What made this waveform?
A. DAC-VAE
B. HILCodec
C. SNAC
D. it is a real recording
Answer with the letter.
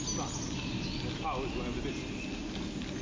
D